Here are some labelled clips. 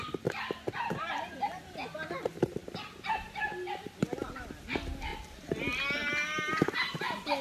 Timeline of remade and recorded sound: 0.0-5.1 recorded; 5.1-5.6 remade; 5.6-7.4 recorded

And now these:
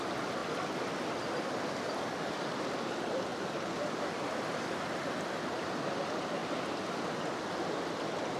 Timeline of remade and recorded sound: 0.0-8.4 recorded

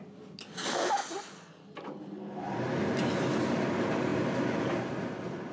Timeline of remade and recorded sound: 0.0-5.5 recorded

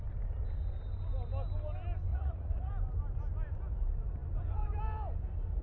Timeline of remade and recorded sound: 0.0-2.1 recorded; 2.1-2.7 remade; 2.7-5.6 recorded

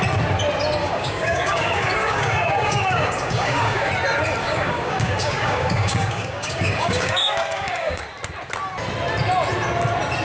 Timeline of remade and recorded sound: 0.0-0.8 recorded; 0.8-3.9 remade; 3.9-4.4 recorded; 4.4-8.0 remade; 8.0-10.2 recorded

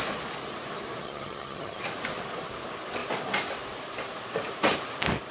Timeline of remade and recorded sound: 0.0-1.0 recorded; 1.0-1.8 remade; 1.8-5.3 recorded